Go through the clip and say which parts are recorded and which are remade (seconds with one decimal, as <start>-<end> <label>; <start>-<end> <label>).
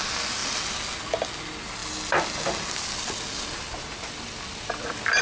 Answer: 0.0-5.2 recorded